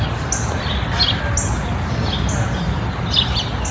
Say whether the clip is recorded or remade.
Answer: recorded